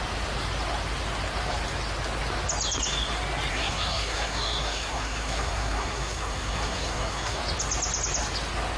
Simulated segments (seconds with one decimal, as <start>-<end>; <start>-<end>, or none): 3.5-7.4